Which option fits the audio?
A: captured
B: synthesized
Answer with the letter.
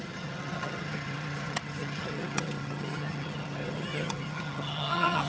B